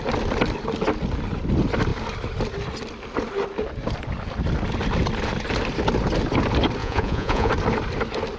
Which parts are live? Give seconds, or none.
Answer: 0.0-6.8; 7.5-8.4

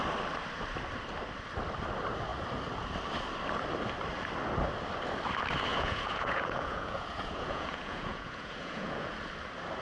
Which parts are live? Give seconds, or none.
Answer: 0.0-5.7; 9.1-9.8

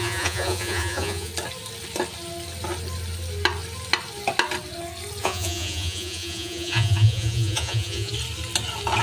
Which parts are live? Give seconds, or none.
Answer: 1.3-5.2; 8.1-9.0

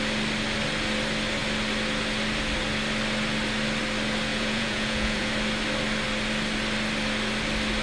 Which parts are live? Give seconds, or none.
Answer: 0.0-4.3; 5.3-7.8